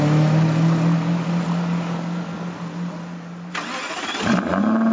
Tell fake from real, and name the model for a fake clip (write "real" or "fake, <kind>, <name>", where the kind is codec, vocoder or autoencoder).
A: real